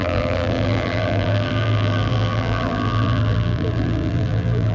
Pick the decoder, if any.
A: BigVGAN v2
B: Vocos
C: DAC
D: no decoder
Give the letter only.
A